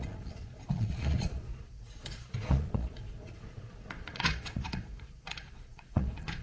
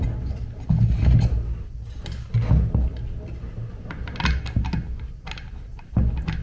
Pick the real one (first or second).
second